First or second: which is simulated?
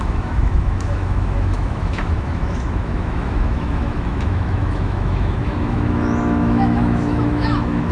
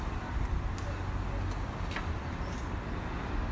first